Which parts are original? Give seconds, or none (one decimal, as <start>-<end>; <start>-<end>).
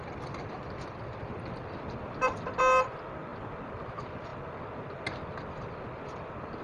0.0-3.3; 3.9-6.6